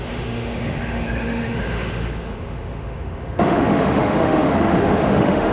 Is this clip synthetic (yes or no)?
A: yes